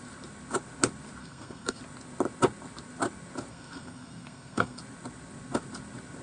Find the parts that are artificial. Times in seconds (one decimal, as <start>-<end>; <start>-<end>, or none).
1.2-1.8; 3.5-4.8